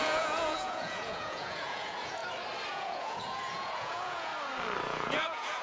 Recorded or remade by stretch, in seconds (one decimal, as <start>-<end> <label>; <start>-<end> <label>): 0.0-2.2 remade; 2.2-2.7 recorded; 2.7-4.3 remade; 4.3-4.8 recorded; 4.8-5.6 remade